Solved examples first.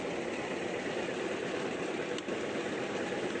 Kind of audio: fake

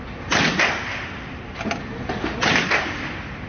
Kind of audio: real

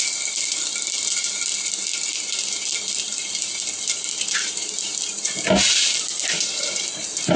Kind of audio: real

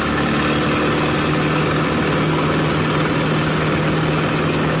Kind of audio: real